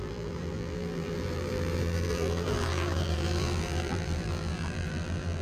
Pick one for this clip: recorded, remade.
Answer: remade